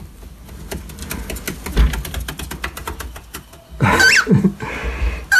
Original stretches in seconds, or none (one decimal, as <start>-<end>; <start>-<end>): 0.0-2.8; 3.6-4.8